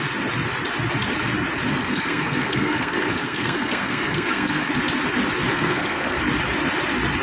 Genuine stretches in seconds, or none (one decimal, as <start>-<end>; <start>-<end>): 0.0-1.8; 4.7-5.5; 6.2-7.2